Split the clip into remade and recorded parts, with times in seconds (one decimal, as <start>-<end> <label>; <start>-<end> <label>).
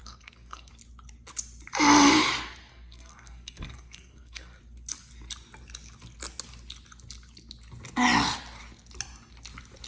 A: 0.0-0.7 remade; 0.7-2.7 recorded; 2.7-4.6 remade; 4.6-9.9 recorded